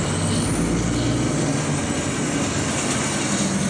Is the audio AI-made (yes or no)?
no